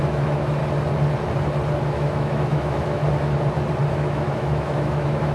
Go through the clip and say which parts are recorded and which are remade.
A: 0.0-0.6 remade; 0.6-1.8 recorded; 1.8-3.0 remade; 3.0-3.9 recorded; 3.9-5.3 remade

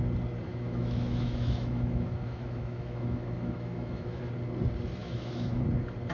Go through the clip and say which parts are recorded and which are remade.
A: 0.0-0.5 recorded; 0.5-4.2 remade; 4.2-5.0 recorded; 5.0-5.6 remade; 5.6-6.1 recorded

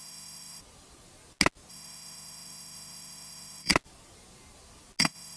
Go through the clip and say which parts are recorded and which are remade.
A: 0.0-0.6 remade; 0.6-1.7 recorded; 1.7-3.7 remade; 3.7-5.0 recorded; 5.0-5.4 remade